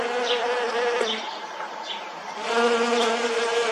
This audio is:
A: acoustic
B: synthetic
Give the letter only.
A